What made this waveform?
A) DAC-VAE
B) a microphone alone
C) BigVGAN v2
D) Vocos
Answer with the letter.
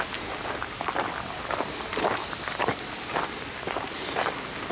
B